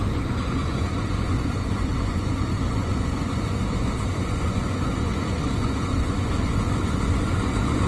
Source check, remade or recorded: remade